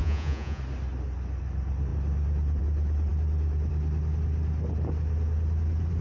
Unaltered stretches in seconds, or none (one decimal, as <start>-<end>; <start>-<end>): 0.6-6.0